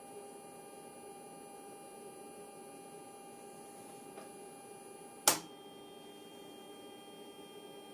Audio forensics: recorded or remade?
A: recorded